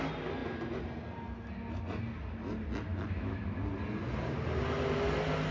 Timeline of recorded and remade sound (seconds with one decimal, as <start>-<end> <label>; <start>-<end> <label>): 0.0-2.9 recorded; 2.9-3.4 remade; 3.4-5.5 recorded